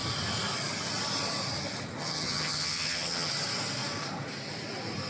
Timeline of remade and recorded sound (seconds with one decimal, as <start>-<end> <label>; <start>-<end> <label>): 0.0-2.0 recorded; 2.0-3.3 remade; 3.3-5.1 recorded